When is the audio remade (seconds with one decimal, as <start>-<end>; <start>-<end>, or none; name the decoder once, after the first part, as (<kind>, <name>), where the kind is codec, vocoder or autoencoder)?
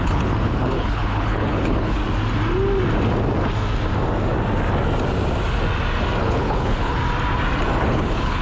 0.0-2.0 (codec, HILCodec); 6.2-7.0; 7.8-8.4